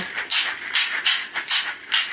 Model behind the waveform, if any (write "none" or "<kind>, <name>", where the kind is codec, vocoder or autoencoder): none